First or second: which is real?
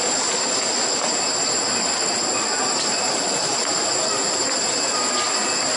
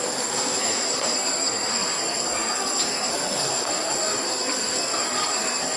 first